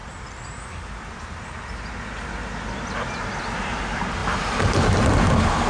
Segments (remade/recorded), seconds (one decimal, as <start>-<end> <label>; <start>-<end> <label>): 0.0-5.7 recorded